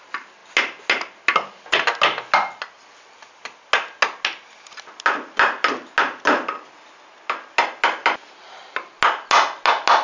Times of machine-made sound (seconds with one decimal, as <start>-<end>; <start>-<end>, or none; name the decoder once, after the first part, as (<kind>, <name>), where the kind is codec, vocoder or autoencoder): none